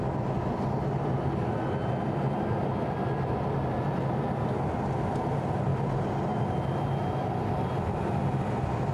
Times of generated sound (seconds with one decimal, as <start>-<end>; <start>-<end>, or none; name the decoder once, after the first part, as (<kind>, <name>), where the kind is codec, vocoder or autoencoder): none